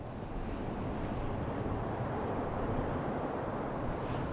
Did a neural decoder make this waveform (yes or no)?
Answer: no